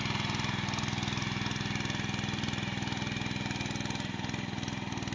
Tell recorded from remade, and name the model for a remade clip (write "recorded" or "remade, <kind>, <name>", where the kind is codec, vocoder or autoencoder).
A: recorded